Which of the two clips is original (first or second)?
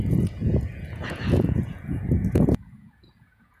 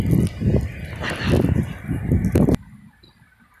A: second